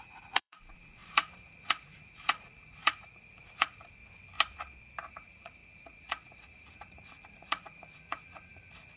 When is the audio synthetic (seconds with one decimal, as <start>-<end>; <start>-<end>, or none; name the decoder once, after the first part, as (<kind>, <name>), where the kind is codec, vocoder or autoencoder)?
0.0-4.0 (vocoder, Vocos); 5.1-9.0